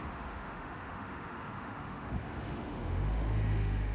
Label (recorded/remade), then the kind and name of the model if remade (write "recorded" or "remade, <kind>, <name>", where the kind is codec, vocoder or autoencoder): remade, autoencoder, DAC-VAE